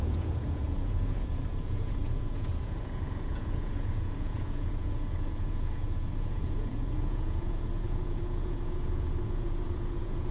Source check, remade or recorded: remade